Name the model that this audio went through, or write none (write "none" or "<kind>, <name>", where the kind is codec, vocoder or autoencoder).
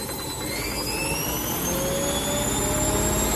none